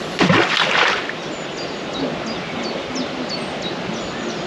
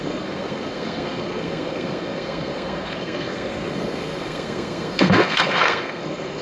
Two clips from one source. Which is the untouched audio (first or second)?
first